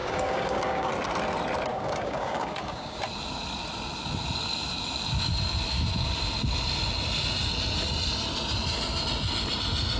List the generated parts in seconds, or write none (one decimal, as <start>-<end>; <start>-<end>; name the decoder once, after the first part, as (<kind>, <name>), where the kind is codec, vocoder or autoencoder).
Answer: 0.0-0.9 (codec, DAC); 1.7-3.0